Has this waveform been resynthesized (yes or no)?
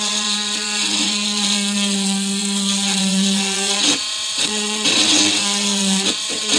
yes